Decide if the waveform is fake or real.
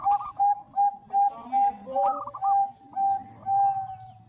real